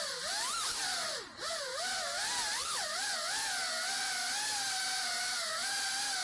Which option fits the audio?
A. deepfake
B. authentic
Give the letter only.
B